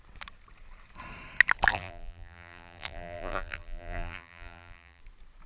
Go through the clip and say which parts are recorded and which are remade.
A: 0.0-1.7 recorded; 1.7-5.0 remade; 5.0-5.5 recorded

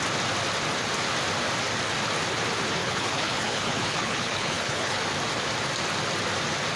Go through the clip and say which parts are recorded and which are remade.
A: 0.0-2.8 recorded; 2.8-5.0 remade; 5.0-6.8 recorded

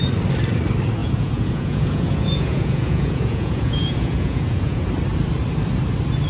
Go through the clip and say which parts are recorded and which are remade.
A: 0.0-1.0 recorded; 1.0-4.8 remade; 4.8-6.3 recorded

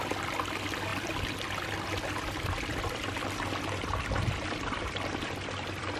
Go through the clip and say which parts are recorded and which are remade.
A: 0.0-6.0 recorded

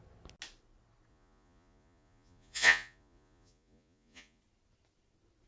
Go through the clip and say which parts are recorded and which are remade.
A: 0.0-1.1 recorded; 1.1-4.4 remade; 4.4-5.5 recorded

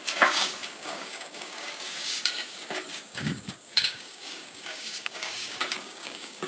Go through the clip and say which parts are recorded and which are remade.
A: 0.0-6.5 remade

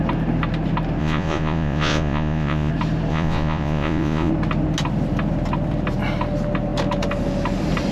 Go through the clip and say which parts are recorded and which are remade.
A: 0.0-1.0 recorded; 1.0-2.7 remade; 2.7-3.1 recorded; 3.1-4.3 remade; 4.3-7.9 recorded

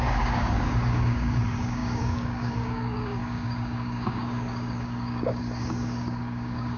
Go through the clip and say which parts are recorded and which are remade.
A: 0.0-6.8 remade